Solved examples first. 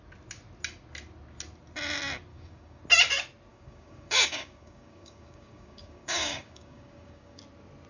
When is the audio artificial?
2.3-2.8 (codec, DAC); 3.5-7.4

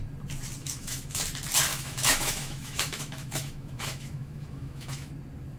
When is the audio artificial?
0.6-1.2 (autoencoder, DAC-VAE); 1.7-5.1

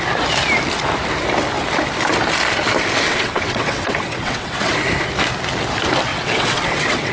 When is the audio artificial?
3.1-4.7 (vocoder, WaveNeXt); 6.1-7.1